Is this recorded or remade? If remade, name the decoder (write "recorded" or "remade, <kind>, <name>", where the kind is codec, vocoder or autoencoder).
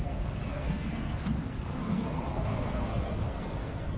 remade, codec, SNAC